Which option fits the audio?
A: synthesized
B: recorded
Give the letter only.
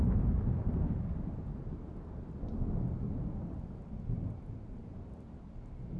B